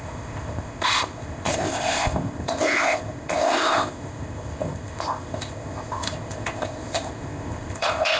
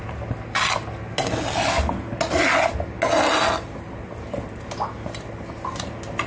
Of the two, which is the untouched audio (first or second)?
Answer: second